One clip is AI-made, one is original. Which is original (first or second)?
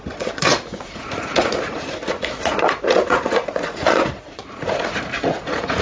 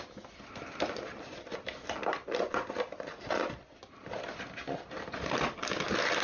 second